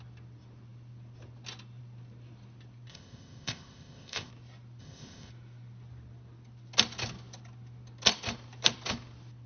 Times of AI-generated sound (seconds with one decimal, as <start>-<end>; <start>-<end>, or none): 2.9-4.3; 4.8-5.3